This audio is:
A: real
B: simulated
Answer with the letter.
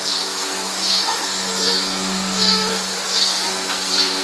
B